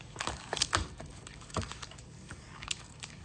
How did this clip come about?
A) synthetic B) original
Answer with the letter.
A